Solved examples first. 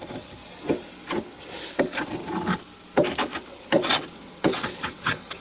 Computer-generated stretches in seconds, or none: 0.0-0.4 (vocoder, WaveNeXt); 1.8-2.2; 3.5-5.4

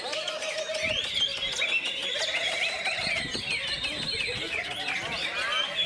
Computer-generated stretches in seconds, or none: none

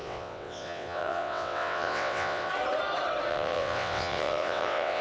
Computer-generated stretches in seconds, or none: 0.0-2.5 (vocoder, WaveNeXt); 3.3-5.0

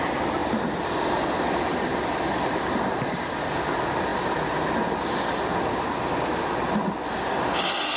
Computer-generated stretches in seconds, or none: none

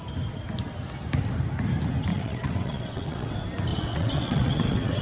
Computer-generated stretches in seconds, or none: 2.1-3.3 (vocoder, WaveNeXt); 3.7-5.0